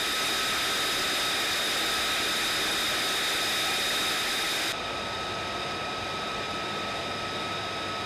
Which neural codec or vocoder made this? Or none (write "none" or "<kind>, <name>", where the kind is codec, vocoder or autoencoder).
none